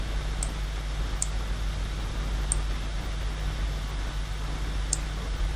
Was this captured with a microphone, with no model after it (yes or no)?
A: yes